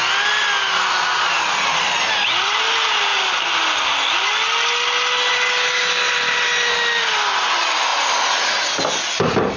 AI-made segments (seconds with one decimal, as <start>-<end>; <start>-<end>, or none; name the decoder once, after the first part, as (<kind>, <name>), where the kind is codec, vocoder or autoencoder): none